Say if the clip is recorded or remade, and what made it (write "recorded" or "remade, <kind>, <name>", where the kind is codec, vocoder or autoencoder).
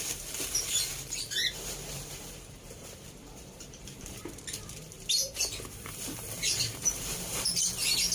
remade, vocoder, BigVGAN v2